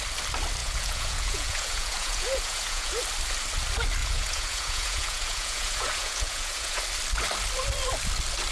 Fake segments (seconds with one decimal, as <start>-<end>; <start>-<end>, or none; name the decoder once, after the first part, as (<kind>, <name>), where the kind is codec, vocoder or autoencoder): 0.6-3.0 (vocoder, Vocos); 4.0-6.8